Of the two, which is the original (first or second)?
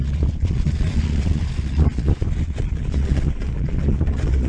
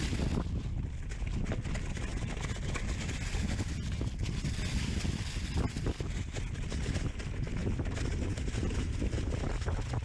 second